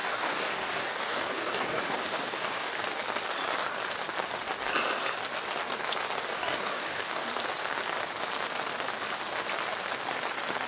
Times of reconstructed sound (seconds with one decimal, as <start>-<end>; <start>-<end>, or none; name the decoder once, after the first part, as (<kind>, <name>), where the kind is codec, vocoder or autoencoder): 0.0-2.7 (codec, DAC); 6.3-7.3